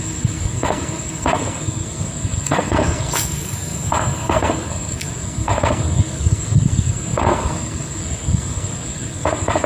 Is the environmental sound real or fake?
fake